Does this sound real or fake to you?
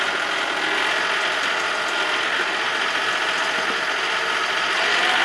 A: real